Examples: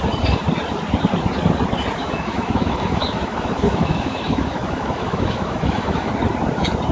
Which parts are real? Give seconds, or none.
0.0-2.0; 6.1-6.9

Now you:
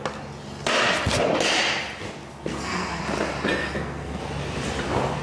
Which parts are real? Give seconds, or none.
0.0-2.4; 3.0-3.6; 4.2-5.2

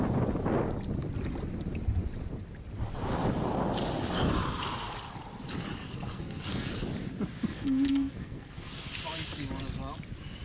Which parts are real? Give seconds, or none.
0.0-5.8; 6.7-7.4; 8.7-10.4

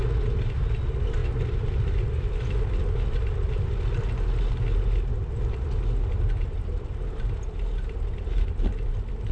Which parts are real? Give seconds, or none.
0.0-9.3

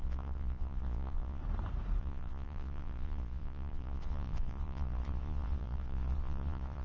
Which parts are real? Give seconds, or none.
1.4-2.0

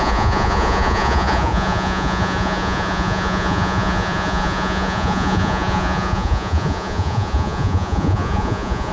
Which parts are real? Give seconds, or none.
none

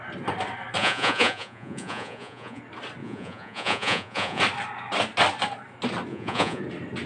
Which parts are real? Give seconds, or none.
0.0-0.8; 2.6-3.0; 4.4-6.1; 6.6-7.1